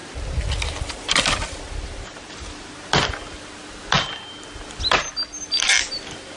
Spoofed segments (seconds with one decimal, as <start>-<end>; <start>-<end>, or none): 0.0-2.3